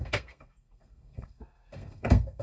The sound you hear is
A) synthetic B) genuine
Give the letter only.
A